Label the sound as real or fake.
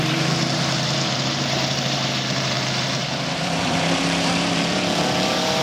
fake